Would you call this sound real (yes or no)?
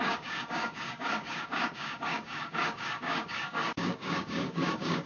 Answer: no